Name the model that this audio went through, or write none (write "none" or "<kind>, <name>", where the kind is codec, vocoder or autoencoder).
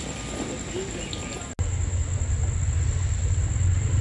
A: none